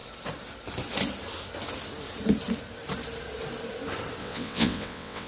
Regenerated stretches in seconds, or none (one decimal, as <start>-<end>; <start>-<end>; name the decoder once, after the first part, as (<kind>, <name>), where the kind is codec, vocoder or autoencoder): 4.2-5.3 (vocoder, WaveNeXt)